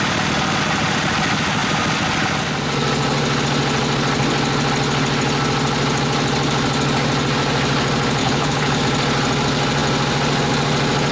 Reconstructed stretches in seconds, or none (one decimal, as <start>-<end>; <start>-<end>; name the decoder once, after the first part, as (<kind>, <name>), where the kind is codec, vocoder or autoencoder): 8.2-8.8 (codec, HILCodec)